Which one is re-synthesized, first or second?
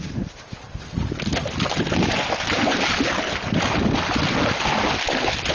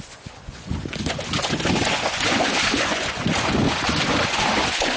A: second